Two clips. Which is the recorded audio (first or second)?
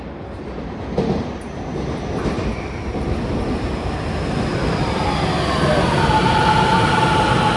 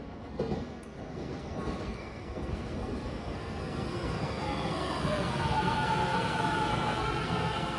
first